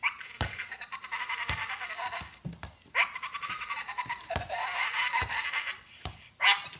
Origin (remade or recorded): recorded